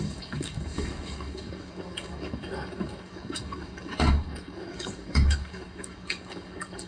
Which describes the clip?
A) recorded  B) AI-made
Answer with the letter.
B